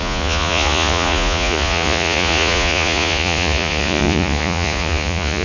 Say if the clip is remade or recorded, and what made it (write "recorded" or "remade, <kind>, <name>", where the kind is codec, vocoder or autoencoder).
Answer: remade, vocoder, Vocos